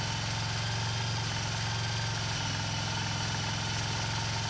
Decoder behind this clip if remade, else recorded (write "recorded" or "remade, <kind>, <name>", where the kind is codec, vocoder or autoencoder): recorded